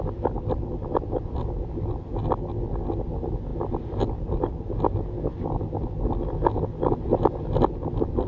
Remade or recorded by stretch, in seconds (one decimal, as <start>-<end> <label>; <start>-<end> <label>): 0.0-8.3 recorded